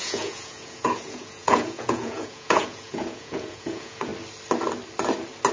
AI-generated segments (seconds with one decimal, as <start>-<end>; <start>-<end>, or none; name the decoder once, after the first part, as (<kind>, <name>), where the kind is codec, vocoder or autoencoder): 0.0-4.1 (vocoder, Vocos)